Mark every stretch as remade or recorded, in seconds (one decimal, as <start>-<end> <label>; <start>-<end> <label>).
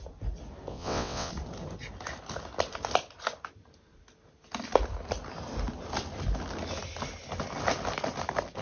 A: 0.0-0.7 recorded; 0.7-1.3 remade; 1.3-8.6 recorded